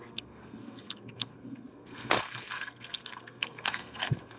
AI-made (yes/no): yes